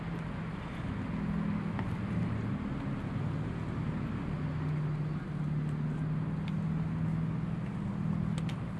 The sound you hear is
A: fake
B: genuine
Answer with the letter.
B